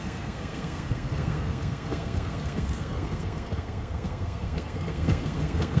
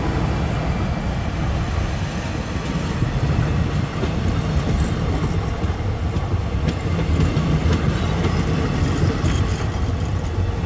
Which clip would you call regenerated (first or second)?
first